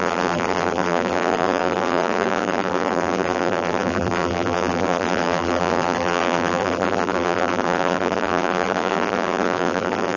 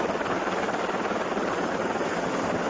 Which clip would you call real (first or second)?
second